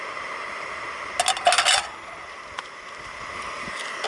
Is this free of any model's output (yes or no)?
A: yes